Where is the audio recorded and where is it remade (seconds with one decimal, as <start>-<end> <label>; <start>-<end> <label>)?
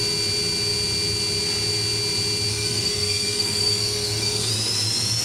0.0-2.5 recorded; 2.5-4.5 remade; 4.5-5.2 recorded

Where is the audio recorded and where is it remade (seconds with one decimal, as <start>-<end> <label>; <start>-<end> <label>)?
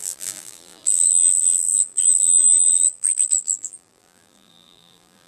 0.0-5.3 remade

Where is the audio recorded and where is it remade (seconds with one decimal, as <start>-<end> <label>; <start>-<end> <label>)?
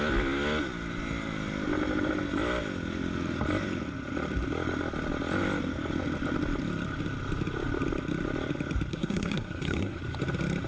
0.0-8.9 recorded; 8.9-10.0 remade; 10.0-10.7 recorded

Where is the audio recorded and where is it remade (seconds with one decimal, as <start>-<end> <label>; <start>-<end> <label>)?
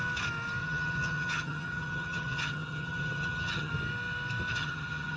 0.0-0.6 recorded; 0.6-3.7 remade; 3.7-4.5 recorded; 4.5-5.2 remade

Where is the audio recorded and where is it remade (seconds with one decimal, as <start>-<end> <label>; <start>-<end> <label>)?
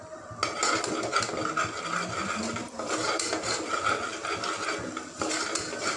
0.0-6.0 recorded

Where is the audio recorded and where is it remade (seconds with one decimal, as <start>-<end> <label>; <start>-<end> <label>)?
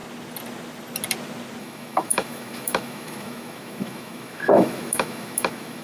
0.0-1.6 recorded; 1.6-5.8 remade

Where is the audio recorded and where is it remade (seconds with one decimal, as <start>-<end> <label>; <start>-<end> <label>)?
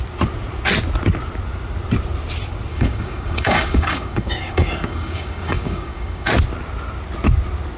0.0-2.7 recorded; 2.7-6.3 remade; 6.3-7.8 recorded